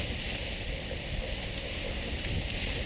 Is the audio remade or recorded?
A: recorded